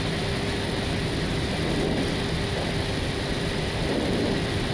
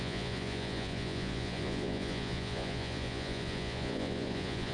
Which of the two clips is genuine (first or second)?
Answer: first